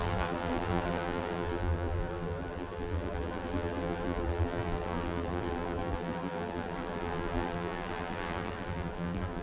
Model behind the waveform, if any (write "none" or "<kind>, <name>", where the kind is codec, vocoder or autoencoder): vocoder, BigVGAN v2